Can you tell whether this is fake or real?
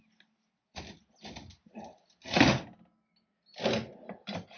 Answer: real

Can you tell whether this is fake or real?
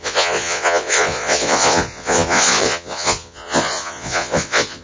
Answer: fake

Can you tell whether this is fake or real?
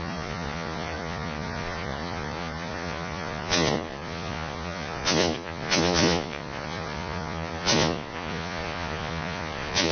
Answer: fake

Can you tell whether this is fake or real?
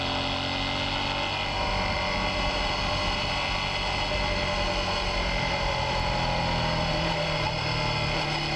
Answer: real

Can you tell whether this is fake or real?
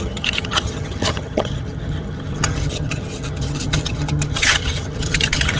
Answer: fake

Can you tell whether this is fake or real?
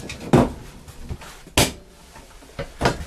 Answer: real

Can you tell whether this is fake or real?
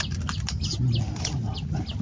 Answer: real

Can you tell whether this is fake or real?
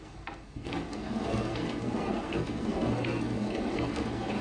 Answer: fake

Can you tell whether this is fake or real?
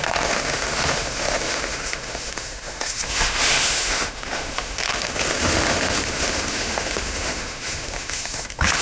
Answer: fake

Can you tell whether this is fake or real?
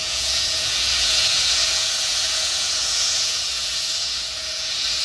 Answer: fake